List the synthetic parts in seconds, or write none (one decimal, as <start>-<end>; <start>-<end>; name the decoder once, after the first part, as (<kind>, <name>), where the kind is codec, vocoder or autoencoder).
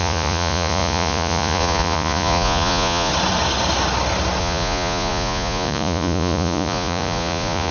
0.0-3.1 (vocoder, Vocos); 4.4-7.7